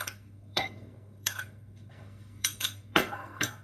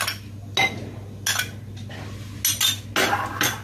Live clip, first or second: second